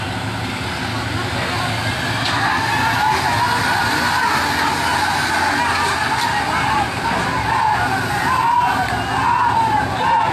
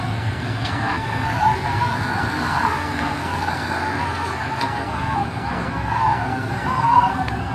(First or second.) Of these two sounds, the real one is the first